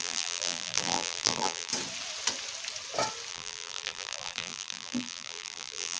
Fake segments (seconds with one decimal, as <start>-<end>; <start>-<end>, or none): 0.0-1.7; 3.3-6.0